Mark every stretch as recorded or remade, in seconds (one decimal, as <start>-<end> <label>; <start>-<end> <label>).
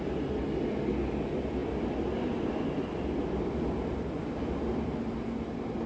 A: 0.0-5.9 recorded